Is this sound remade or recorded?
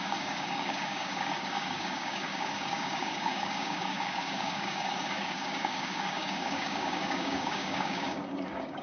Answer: remade